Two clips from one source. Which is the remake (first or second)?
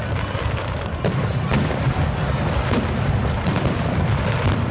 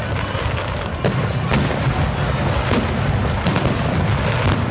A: first